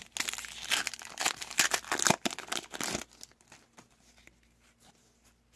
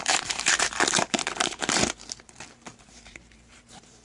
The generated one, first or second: second